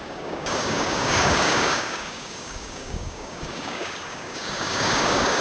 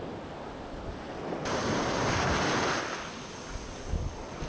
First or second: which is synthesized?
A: first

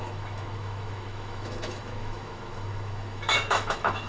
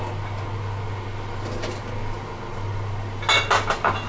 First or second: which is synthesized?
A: first